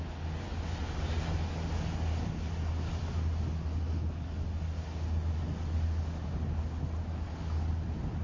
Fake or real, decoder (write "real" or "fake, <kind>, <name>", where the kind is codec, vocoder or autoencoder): real